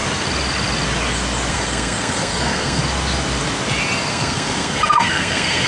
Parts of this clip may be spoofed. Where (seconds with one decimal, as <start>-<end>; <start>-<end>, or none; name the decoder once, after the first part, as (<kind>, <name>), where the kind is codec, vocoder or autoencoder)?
1.5-2.8 (codec, SNAC); 4.1-5.7